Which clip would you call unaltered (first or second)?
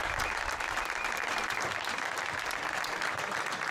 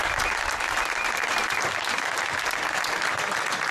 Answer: second